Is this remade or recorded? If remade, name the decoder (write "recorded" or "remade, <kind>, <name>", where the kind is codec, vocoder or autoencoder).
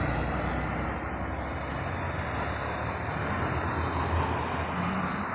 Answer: recorded